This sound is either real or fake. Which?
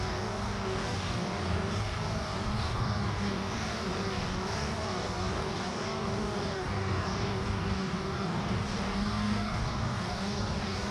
fake